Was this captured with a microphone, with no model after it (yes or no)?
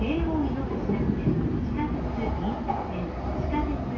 yes